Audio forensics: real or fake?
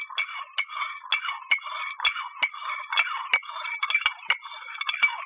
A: real